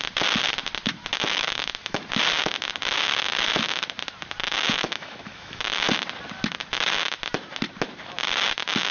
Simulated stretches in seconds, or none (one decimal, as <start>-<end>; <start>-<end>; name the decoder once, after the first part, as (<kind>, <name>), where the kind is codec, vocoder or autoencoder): 1.2-2.0 (autoencoder, DAC-VAE); 4.4-5.6